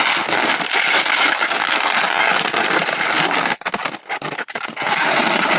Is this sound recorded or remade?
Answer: recorded